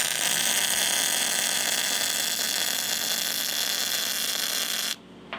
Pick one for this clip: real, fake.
real